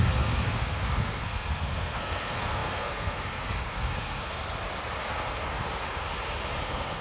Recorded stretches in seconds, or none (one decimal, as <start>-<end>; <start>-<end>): 4.4-5.0; 5.6-6.6